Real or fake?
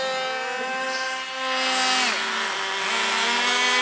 real